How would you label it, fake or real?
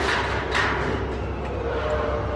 real